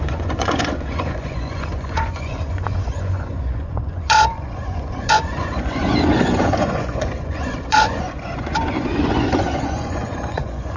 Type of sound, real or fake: fake